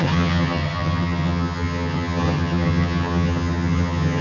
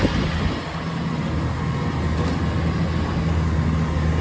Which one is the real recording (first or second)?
second